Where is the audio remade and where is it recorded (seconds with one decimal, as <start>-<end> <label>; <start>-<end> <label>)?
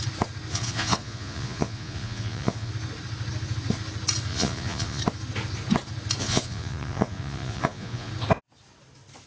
0.0-0.5 recorded; 0.5-2.7 remade; 2.7-4.3 recorded; 4.3-5.0 remade; 5.0-6.2 recorded; 6.2-8.1 remade; 8.1-9.3 recorded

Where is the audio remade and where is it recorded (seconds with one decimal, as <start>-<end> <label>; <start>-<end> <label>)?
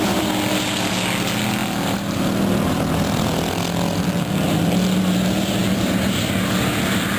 0.0-7.2 recorded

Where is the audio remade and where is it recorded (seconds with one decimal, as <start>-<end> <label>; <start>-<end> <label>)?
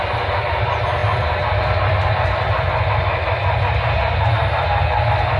0.0-5.4 recorded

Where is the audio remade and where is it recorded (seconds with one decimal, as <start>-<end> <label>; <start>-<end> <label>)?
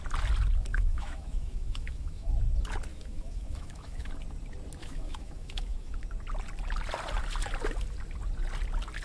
0.0-0.7 recorded; 0.7-2.3 remade; 2.3-2.9 recorded; 2.9-4.1 remade; 4.1-4.8 recorded; 4.8-5.9 remade; 5.9-9.0 recorded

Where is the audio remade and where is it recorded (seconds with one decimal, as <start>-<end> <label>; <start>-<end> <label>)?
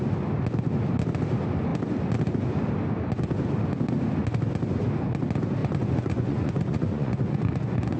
0.0-5.6 recorded; 5.6-8.0 remade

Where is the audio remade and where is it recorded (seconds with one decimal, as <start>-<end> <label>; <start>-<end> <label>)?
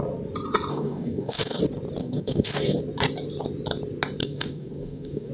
0.0-0.7 recorded; 0.7-1.6 remade; 1.6-2.0 recorded; 2.0-2.8 remade; 2.8-4.2 recorded; 4.2-5.3 remade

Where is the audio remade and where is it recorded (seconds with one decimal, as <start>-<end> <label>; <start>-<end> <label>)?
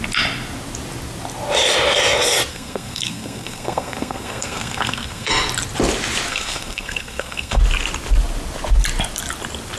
0.0-2.5 recorded; 2.5-5.3 remade; 5.3-6.3 recorded; 6.3-7.6 remade; 7.6-9.8 recorded